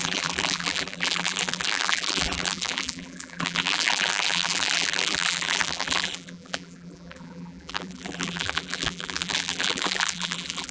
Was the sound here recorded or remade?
remade